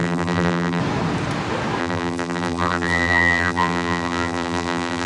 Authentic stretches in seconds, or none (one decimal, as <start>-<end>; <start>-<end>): 0.8-1.8